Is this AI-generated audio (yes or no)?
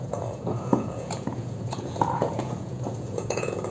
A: yes